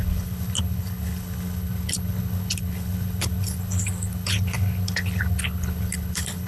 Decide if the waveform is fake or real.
fake